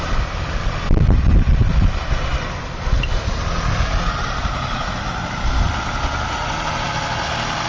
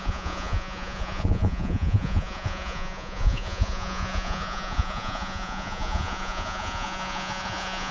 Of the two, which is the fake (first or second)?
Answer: second